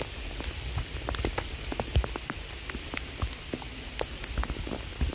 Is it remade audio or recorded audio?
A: recorded